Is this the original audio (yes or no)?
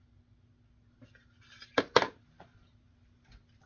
yes